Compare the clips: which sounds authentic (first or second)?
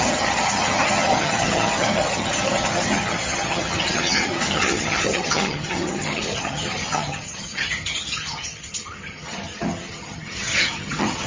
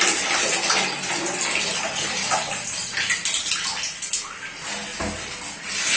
second